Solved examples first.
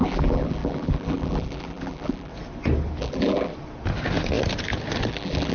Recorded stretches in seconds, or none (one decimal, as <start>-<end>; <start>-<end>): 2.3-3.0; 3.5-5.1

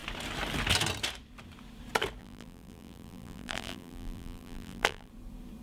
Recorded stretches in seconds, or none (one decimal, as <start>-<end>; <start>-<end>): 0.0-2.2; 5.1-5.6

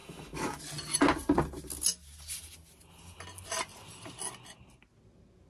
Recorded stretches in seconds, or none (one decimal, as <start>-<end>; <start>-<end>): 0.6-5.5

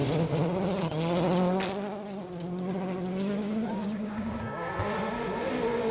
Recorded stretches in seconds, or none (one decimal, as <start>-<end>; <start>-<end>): 0.0-3.4; 4.7-5.9